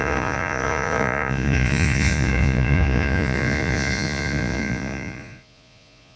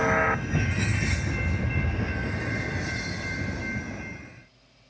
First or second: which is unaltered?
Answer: second